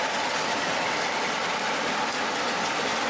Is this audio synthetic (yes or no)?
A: yes